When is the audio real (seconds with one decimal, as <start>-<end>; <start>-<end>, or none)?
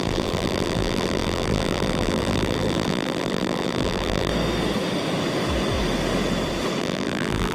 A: 4.3-6.8